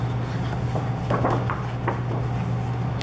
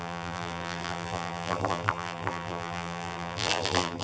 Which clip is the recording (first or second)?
first